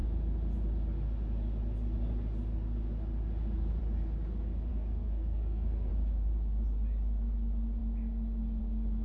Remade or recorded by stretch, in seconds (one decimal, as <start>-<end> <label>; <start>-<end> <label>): 0.0-4.7 recorded; 4.7-5.9 remade; 5.9-9.0 recorded